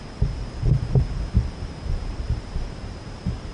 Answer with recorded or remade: remade